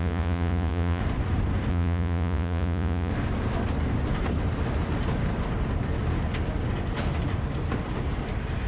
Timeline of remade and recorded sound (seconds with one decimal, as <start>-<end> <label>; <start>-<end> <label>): 0.0-1.0 remade; 1.0-1.7 recorded; 1.7-3.1 remade; 3.1-8.7 recorded